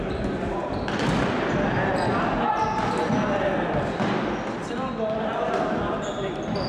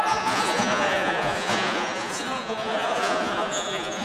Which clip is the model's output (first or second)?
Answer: second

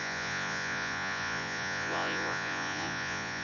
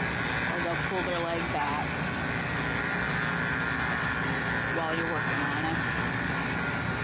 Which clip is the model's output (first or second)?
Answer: first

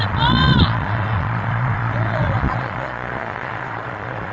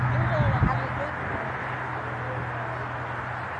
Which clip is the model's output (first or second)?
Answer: first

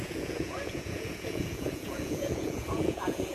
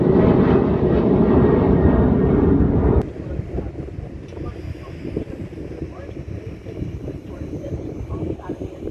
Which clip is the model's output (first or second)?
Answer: first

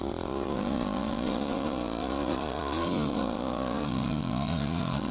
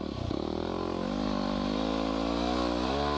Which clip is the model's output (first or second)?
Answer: first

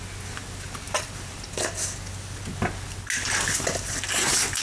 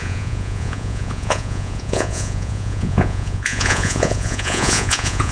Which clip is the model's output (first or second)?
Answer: second